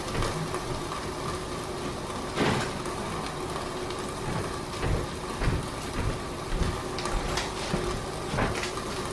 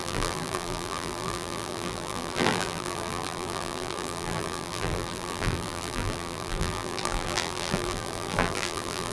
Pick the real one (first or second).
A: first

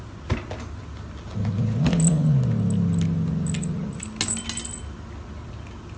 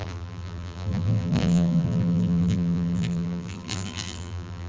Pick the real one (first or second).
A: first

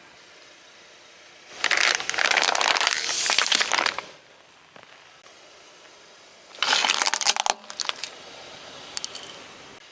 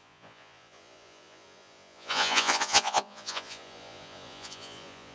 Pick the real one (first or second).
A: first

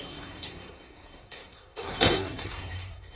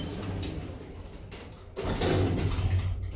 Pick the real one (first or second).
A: second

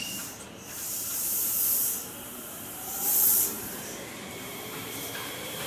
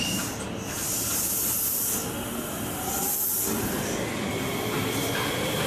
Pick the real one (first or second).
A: second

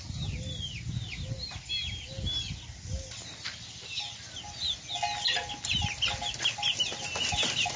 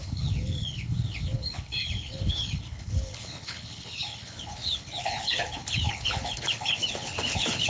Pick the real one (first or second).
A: first